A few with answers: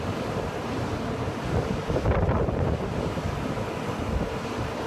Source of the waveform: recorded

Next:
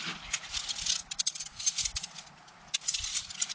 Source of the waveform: recorded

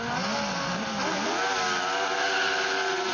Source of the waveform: recorded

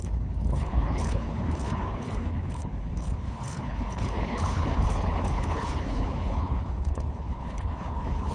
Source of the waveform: remade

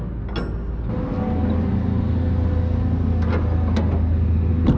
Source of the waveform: recorded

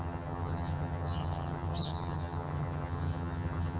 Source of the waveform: remade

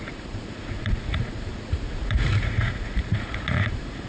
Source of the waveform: remade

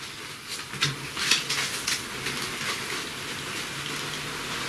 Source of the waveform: recorded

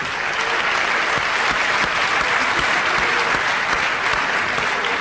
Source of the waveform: recorded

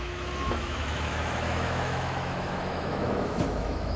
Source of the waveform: remade